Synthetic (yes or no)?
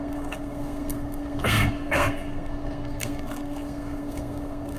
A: yes